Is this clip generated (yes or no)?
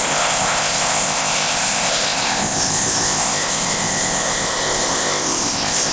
yes